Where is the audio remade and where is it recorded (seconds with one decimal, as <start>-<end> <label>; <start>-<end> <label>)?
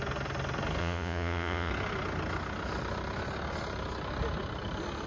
0.0-0.8 recorded; 0.8-1.7 remade; 1.7-5.1 recorded